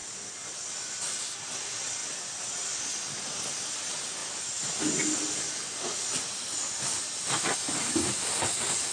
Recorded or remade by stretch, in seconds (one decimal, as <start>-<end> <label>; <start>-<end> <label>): 0.0-0.7 remade; 0.7-2.0 recorded; 2.0-2.7 remade; 2.7-8.9 recorded